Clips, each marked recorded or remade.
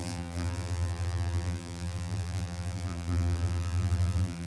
remade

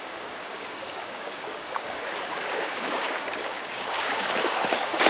remade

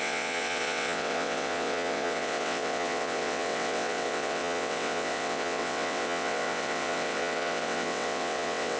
remade